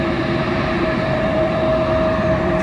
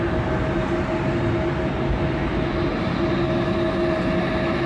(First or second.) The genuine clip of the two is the second